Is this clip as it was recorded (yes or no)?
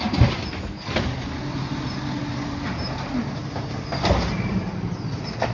yes